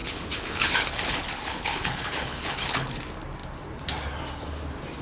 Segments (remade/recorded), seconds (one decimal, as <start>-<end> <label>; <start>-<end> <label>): 0.0-3.0 remade; 3.0-5.0 recorded